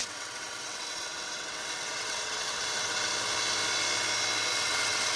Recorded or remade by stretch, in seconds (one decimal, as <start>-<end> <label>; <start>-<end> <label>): 0.0-3.1 remade; 3.1-4.5 recorded; 4.5-5.2 remade